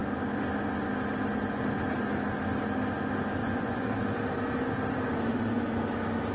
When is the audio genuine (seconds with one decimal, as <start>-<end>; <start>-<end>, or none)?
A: 0.0-3.4; 4.0-5.3; 5.8-6.3